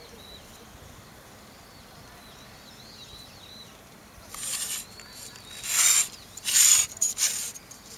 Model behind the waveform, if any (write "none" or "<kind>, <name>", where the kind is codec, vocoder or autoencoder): vocoder, BigVGAN v2